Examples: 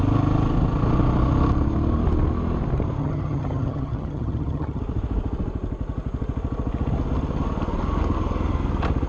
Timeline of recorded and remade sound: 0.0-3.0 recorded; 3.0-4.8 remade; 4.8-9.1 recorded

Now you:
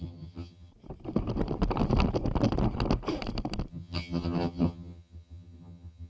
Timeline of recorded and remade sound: 0.0-0.7 remade; 0.7-3.7 recorded; 3.7-6.1 remade

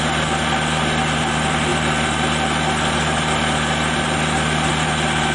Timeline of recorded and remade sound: 0.0-5.3 recorded

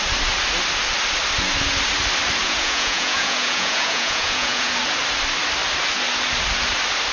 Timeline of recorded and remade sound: 0.0-2.4 recorded; 2.4-4.8 remade; 4.8-7.1 recorded

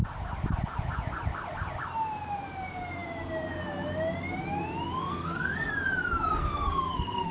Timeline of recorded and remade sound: 0.0-5.0 recorded; 5.0-5.7 remade; 5.7-6.4 recorded; 6.4-7.3 remade